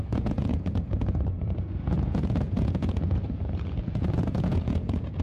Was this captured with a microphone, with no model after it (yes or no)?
no